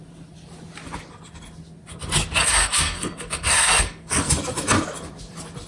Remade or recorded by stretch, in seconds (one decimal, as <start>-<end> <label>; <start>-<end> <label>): 0.0-2.4 recorded; 2.4-4.3 remade; 4.3-5.7 recorded